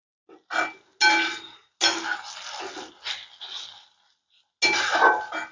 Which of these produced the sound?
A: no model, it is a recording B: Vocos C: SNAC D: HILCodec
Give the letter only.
A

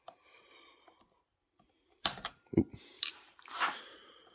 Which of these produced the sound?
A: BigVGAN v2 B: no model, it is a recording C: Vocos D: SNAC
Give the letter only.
A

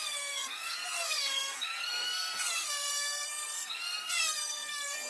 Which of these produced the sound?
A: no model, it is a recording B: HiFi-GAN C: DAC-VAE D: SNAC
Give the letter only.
D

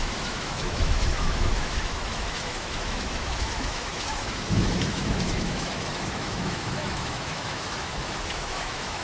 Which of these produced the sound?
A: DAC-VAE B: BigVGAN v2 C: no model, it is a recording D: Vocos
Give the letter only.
A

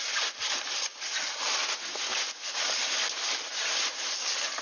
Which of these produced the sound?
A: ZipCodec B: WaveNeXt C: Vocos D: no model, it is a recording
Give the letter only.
D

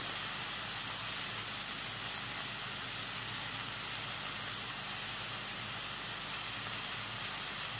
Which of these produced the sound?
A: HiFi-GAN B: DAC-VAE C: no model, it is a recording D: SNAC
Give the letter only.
C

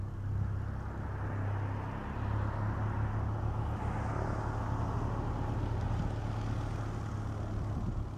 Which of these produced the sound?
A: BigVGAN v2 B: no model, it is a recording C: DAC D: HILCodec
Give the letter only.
B